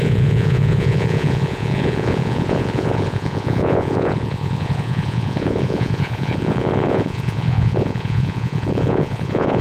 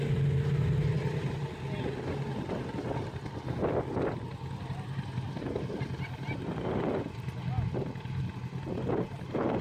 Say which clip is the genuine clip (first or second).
second